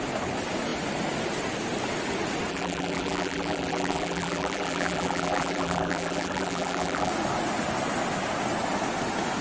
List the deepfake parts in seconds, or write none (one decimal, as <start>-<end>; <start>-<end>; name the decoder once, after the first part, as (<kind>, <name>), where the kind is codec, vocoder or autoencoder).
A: 2.5-7.1 (vocoder, BigVGAN v2)